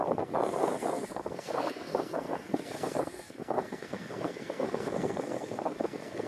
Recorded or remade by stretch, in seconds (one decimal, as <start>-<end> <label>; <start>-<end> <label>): 0.0-6.3 remade